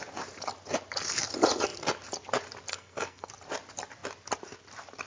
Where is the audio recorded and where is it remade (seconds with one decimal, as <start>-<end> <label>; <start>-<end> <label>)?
0.0-2.7 recorded; 2.7-3.3 remade; 3.3-5.1 recorded